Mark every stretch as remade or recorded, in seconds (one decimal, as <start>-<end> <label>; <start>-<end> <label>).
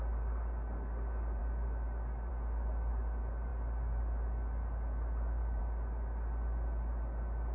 0.0-7.5 recorded